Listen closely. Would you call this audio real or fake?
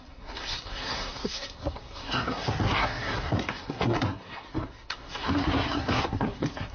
fake